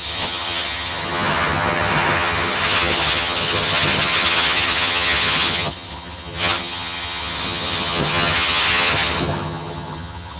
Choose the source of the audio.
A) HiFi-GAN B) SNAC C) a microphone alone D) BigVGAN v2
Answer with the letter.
A